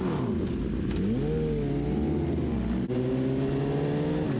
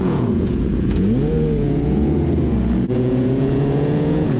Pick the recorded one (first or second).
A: first